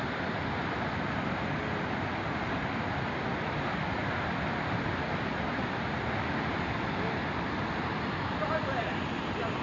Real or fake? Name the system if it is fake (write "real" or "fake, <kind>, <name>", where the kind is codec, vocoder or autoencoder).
real